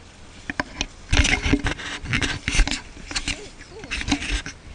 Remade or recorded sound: recorded